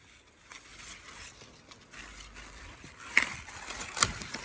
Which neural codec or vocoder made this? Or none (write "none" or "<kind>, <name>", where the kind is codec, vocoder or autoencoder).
none